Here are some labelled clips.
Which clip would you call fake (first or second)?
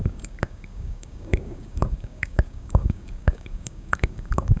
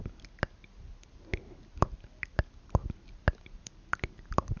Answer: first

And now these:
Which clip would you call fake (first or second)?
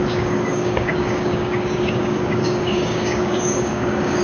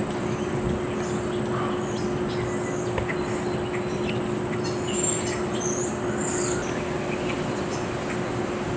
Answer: first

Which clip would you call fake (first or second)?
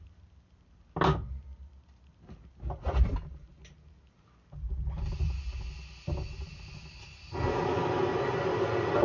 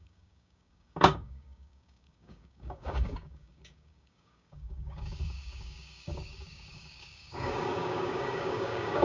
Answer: second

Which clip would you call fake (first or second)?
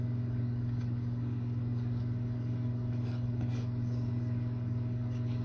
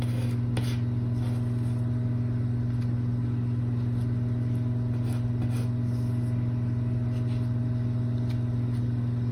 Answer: first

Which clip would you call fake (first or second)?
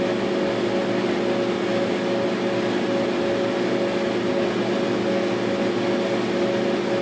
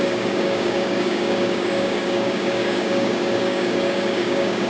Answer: second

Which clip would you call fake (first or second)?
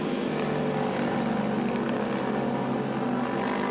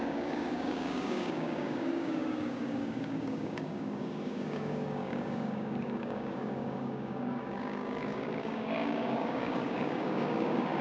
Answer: second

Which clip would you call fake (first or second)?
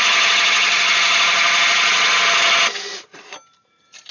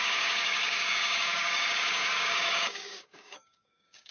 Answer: second